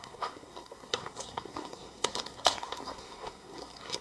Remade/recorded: remade